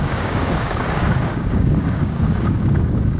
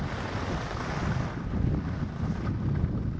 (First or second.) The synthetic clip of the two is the first